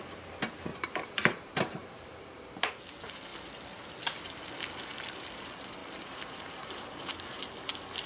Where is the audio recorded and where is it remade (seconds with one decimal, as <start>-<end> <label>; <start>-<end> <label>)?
0.0-0.7 recorded; 0.7-2.7 remade; 2.7-5.8 recorded; 5.8-7.1 remade; 7.1-8.1 recorded